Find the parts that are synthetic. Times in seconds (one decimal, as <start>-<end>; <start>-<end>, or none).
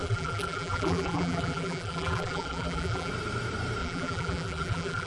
0.0-3.1; 3.8-5.1